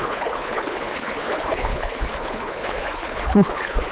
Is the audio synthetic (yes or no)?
yes